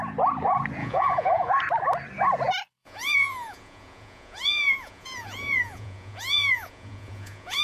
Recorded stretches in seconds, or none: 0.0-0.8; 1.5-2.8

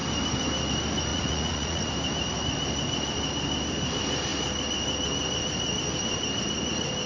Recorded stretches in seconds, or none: 0.0-1.1; 1.9-7.1

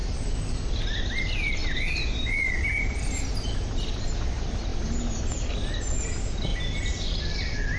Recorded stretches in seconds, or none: 0.0-7.8